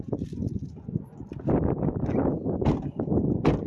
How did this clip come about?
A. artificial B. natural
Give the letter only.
B